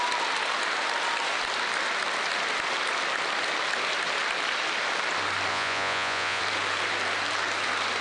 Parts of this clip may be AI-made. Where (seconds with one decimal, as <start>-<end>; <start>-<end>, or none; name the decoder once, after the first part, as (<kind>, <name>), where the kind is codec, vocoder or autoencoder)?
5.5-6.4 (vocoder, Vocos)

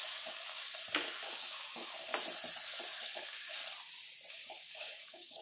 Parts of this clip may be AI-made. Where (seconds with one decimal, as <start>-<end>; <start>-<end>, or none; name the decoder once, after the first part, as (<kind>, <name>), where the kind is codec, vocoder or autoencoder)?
0.0-2.1 (codec, DAC); 3.0-3.6; 4.3-5.4

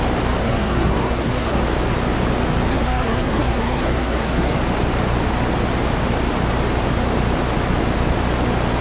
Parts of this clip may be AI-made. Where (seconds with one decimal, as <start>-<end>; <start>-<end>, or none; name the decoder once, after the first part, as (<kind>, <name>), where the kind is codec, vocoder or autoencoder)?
0.4-1.6 (codec, SNAC); 2.7-4.6

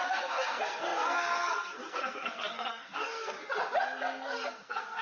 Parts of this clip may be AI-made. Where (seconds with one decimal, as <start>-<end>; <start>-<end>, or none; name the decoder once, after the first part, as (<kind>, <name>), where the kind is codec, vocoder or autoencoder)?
0.0-3.4 (codec, SNAC); 4.0-5.0